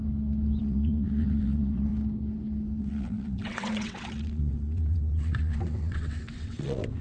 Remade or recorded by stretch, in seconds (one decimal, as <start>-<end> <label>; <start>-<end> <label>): 0.0-0.6 recorded; 0.6-1.9 remade; 1.9-2.8 recorded; 2.8-7.0 remade